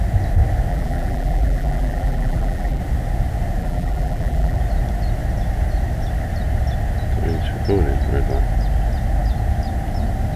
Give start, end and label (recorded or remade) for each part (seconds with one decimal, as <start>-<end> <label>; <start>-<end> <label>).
0.0-0.7 recorded; 0.7-2.8 remade; 2.8-3.6 recorded; 3.6-4.6 remade; 4.6-10.4 recorded